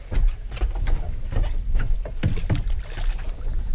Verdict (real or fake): real